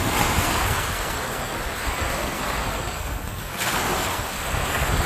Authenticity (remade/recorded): remade